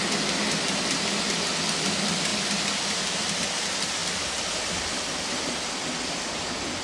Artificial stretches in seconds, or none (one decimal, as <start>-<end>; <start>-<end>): 4.0-6.8

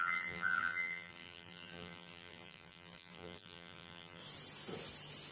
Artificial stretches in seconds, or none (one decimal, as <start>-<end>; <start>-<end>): 0.0-4.2

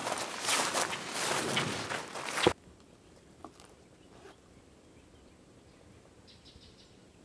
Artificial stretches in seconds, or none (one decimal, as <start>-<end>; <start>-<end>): none

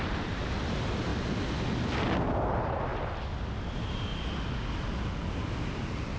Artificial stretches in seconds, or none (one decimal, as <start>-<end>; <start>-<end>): 0.0-1.1; 2.3-2.9; 3.4-4.1; 5.3-6.2

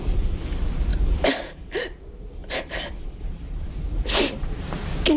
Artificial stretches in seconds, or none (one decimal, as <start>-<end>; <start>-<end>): 0.9-1.6; 2.4-4.8

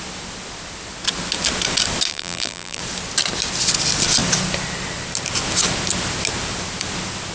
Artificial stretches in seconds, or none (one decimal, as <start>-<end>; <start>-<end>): 2.1-2.8

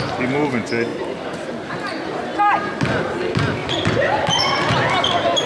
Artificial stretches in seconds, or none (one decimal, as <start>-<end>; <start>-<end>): 3.6-4.7

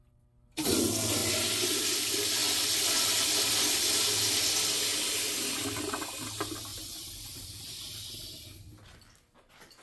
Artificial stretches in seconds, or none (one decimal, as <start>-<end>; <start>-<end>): 2.4-4.5; 4.9-5.5; 6.7-8.6